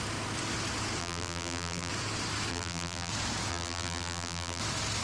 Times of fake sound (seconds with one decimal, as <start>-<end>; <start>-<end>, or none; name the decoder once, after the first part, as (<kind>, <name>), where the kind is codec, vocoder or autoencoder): 1.0-1.9 (vocoder, BigVGAN v2); 2.5-3.1; 3.5-4.6